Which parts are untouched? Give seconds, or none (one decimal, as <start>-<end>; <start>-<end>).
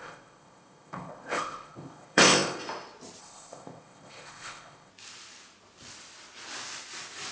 2.6-3.2; 4.9-7.3